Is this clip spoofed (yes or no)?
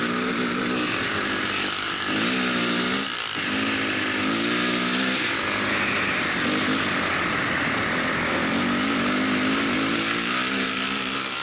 no